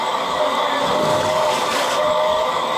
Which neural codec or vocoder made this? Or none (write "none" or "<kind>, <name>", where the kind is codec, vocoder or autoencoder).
codec, DAC